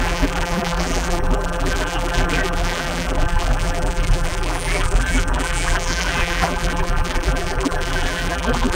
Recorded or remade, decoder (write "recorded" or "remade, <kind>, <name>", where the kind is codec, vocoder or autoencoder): remade, vocoder, BigVGAN v2